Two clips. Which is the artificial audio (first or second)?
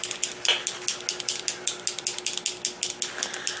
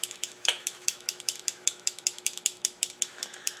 second